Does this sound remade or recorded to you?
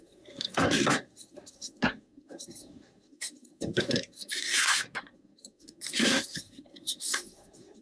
remade